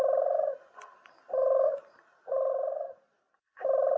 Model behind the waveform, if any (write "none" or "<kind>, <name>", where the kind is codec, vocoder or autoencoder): none